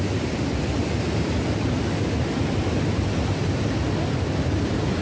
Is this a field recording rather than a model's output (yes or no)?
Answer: yes